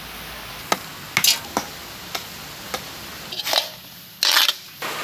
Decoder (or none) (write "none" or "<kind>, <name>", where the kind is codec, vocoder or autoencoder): none